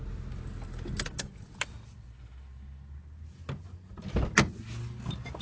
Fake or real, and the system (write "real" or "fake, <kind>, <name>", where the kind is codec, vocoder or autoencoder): real